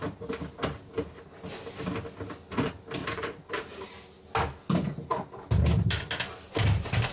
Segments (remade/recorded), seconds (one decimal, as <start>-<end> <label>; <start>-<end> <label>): 0.0-3.0 recorded; 3.0-4.2 remade; 4.2-7.1 recorded